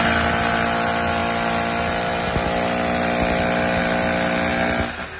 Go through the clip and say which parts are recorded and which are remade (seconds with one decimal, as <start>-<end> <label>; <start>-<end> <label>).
0.0-5.2 recorded